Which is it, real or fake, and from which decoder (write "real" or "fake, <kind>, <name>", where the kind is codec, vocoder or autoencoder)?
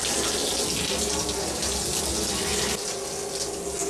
real